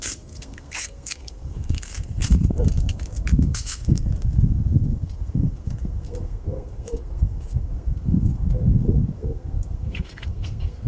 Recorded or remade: remade